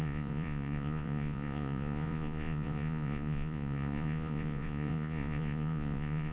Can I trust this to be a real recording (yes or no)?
no